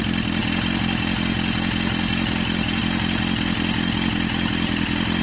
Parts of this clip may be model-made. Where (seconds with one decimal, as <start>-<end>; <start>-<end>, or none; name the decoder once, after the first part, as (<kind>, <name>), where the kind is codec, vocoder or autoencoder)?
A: none